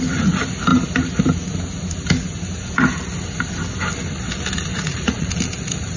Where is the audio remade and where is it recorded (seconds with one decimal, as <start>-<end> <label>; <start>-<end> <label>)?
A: 0.0-4.7 recorded; 4.7-5.3 remade; 5.3-6.0 recorded